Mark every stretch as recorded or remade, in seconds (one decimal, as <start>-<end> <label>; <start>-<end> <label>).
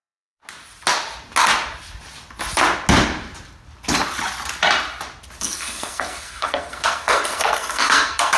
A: 0.0-0.4 remade; 0.4-5.4 recorded; 5.4-8.4 remade